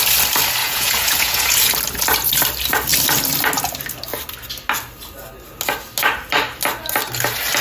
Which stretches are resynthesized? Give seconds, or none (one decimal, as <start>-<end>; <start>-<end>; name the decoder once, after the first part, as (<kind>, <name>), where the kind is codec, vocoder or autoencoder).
0.6-1.7 (vocoder, Vocos)